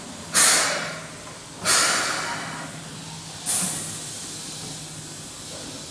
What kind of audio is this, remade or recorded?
recorded